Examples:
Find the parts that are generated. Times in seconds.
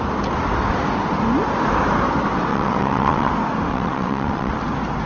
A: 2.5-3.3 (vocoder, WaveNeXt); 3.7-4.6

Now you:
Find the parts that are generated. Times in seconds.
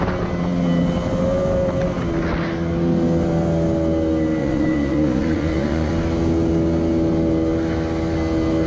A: 4.4-5.9 (vocoder, Vocos)